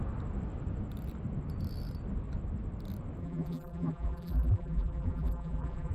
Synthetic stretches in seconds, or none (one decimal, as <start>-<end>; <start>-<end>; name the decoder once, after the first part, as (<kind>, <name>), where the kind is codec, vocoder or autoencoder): 3.2-5.9 (vocoder, BigVGAN v2)